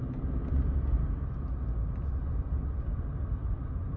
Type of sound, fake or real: real